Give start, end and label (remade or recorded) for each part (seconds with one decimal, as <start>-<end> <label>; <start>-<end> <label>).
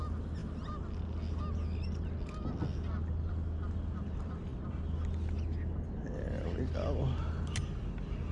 0.0-8.3 recorded